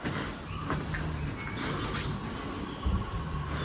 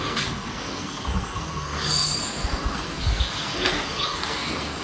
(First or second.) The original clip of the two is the first